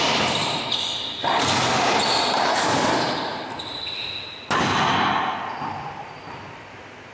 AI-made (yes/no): no